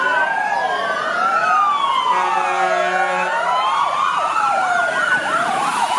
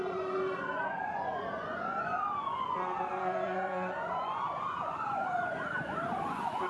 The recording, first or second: first